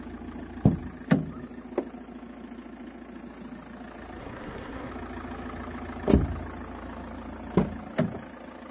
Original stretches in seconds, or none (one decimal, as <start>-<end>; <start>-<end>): 0.0-4.2; 4.9-8.7